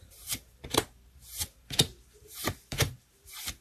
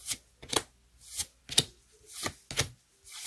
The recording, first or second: second